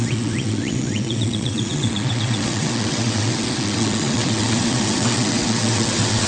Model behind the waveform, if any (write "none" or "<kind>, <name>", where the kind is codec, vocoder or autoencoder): vocoder, WaveNeXt